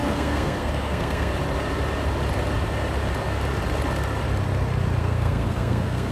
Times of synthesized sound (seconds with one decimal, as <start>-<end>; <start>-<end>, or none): 0.0-1.3; 5.0-6.1